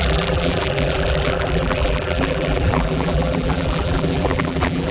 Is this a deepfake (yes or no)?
yes